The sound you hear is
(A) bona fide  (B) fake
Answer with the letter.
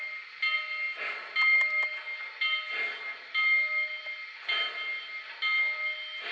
A